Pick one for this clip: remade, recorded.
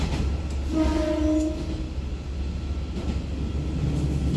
recorded